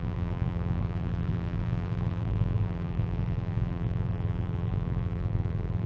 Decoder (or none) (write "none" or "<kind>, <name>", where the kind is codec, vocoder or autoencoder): vocoder, BigVGAN v2